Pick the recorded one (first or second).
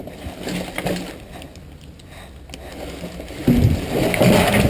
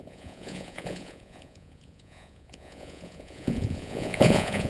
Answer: first